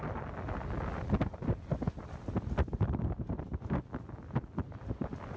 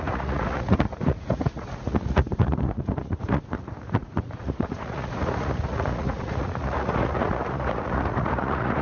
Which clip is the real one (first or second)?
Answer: first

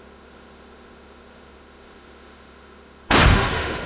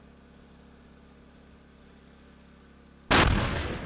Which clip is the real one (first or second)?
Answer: second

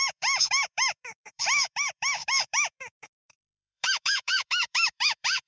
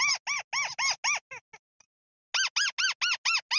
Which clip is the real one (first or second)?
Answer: second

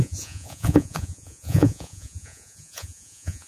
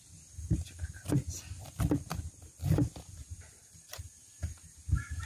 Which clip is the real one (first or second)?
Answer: second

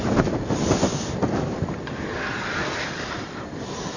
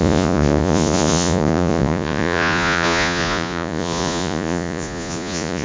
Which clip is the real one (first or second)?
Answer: first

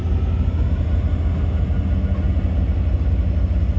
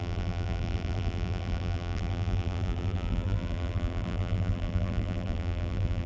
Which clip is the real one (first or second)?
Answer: first